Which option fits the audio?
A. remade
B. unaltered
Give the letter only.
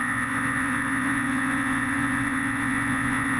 A